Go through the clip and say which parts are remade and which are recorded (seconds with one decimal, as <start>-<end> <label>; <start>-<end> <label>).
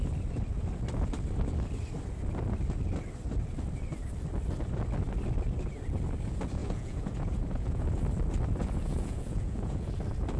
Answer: 0.0-6.6 recorded; 6.6-7.9 remade; 7.9-8.6 recorded; 8.6-9.8 remade; 9.8-10.4 recorded